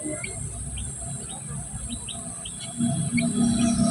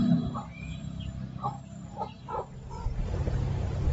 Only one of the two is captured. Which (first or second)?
first